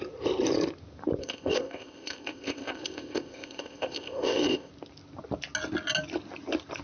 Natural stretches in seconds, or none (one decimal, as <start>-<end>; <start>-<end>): 0.0-1.2; 4.7-6.8